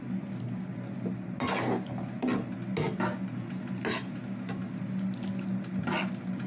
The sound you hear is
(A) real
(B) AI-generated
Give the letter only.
A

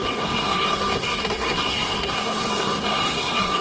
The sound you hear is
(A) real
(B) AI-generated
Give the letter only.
B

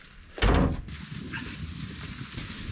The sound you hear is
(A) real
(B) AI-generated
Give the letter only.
A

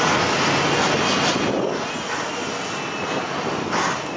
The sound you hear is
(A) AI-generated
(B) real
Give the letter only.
B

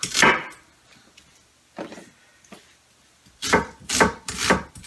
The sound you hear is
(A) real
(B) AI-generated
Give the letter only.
A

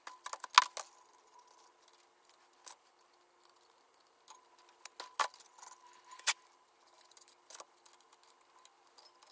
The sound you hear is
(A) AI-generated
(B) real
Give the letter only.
B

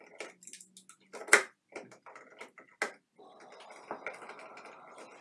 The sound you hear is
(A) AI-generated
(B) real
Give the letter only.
B